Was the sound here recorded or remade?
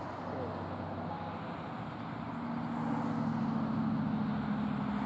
recorded